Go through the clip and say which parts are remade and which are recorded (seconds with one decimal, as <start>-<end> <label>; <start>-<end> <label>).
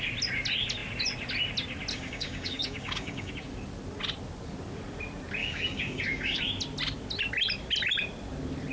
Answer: 0.0-1.9 recorded; 1.9-3.3 remade; 3.3-5.4 recorded; 5.4-6.4 remade; 6.4-8.7 recorded